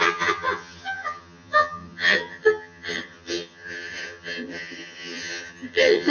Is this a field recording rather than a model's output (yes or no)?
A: no